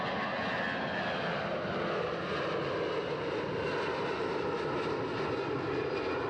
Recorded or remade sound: recorded